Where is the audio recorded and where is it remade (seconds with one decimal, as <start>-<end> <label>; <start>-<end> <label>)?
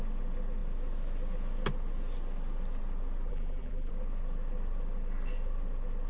0.0-3.3 recorded; 3.3-3.9 remade; 3.9-6.1 recorded